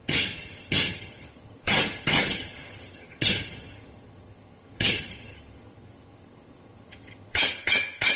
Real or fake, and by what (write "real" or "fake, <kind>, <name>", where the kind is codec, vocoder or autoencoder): fake, vocoder, HiFi-GAN